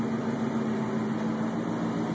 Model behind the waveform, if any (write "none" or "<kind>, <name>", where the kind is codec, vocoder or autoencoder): none